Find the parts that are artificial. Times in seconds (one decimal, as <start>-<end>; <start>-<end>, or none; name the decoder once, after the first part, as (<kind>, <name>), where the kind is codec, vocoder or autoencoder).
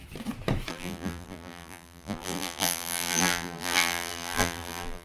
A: 0.7-5.0 (vocoder, BigVGAN v2)